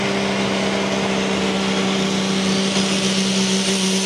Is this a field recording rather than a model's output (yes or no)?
yes